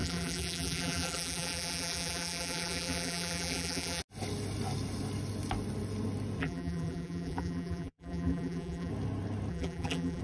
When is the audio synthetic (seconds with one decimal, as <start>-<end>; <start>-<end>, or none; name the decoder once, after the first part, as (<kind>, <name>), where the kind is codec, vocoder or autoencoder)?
0.0-4.0 (vocoder, BigVGAN v2); 6.4-8.9; 9.5-10.2